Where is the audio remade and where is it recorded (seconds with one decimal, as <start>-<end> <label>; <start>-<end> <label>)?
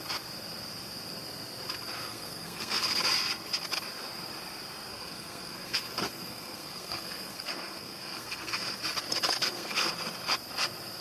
0.0-2.0 recorded; 2.0-3.0 remade; 3.0-4.9 recorded; 4.9-8.8 remade; 8.8-9.4 recorded; 9.4-9.9 remade; 9.9-11.0 recorded